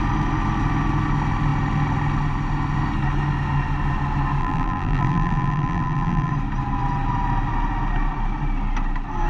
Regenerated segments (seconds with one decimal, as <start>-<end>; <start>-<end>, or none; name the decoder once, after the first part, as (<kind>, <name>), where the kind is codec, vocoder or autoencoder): 4.4-6.3 (vocoder, BigVGAN v2)